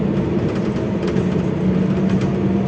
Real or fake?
real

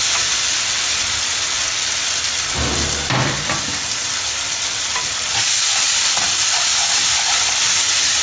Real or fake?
real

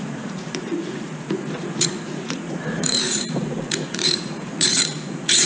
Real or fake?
fake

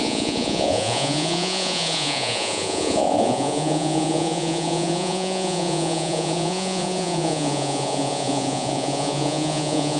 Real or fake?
fake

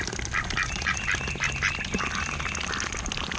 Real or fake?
real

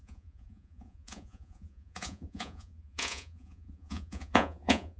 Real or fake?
fake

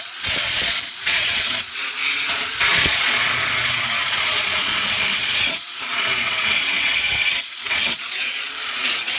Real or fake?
fake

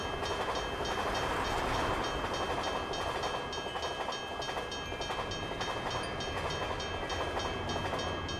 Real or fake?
real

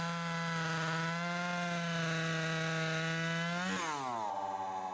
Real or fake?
real